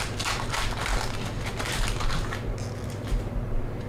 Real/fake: real